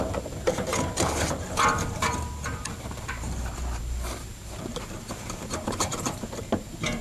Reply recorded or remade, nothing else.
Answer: remade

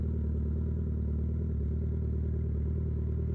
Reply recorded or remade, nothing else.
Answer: recorded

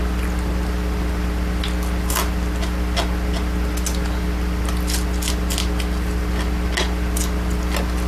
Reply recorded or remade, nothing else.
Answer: recorded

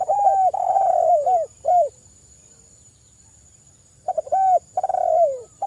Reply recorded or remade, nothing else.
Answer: remade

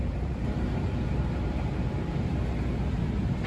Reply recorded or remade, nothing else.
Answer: remade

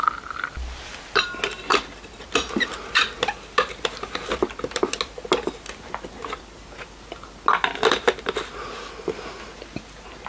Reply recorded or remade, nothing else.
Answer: recorded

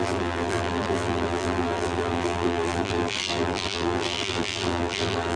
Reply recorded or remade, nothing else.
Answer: remade